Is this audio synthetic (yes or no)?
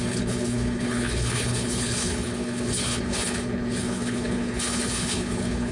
yes